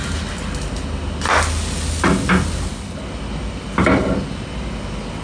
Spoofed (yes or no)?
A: no